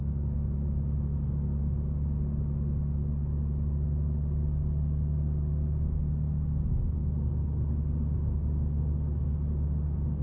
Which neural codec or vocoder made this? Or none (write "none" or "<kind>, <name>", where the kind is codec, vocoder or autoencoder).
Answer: none